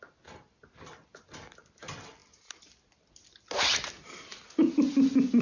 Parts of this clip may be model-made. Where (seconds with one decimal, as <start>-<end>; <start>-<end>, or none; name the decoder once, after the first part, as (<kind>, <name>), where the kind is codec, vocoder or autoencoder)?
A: none